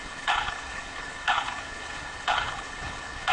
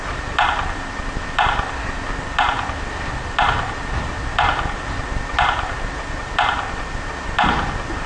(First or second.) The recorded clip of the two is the second